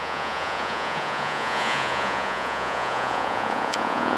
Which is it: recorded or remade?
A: remade